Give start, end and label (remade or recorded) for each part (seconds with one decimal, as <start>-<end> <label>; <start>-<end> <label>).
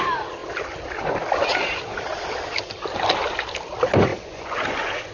0.0-4.1 recorded; 4.1-5.1 remade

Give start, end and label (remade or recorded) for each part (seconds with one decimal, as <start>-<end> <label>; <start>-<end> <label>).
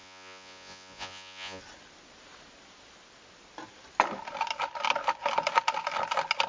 0.0-1.6 remade; 1.6-6.5 recorded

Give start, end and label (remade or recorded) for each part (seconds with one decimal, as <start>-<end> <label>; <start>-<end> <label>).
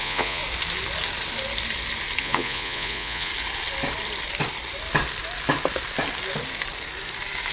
0.0-0.4 remade; 0.4-2.2 recorded; 2.2-3.3 remade; 3.3-7.5 recorded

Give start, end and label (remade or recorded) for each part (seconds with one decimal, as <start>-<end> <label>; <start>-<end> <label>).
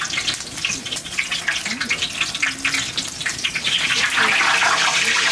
0.0-0.8 recorded; 0.8-1.4 remade; 1.4-3.3 recorded; 3.3-3.9 remade; 3.9-5.3 recorded